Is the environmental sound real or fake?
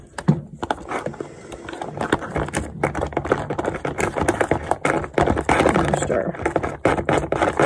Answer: real